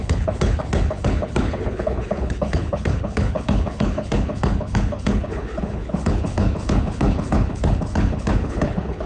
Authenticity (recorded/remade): remade